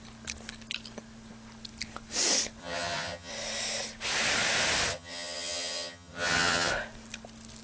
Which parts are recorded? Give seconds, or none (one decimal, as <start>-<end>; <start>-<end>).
0.0-2.6; 3.3-4.9; 6.7-7.6